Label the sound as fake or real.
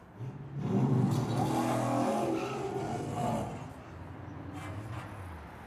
real